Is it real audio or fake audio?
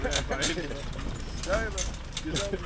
real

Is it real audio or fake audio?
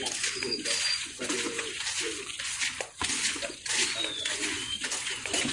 fake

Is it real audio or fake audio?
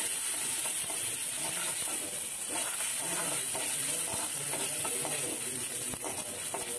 real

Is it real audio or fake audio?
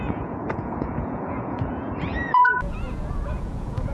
fake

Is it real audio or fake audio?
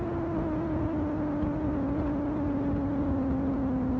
real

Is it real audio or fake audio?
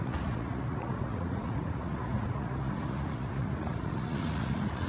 fake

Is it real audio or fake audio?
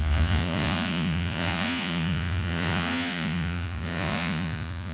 fake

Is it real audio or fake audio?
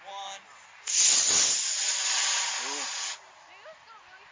real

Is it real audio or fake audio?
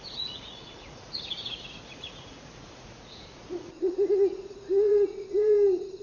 fake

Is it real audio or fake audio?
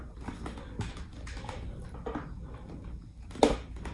real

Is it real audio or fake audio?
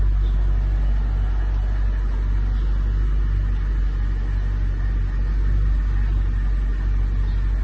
real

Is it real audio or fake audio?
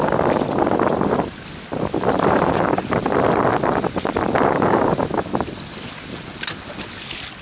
real